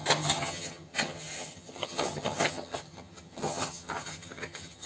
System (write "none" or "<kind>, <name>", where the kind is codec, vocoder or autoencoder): vocoder, HiFi-GAN